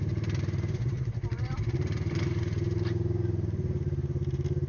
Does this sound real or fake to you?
fake